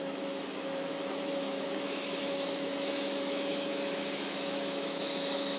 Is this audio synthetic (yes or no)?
yes